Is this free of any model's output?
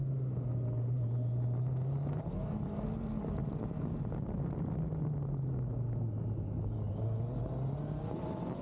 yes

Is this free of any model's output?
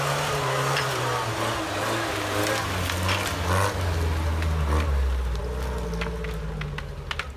yes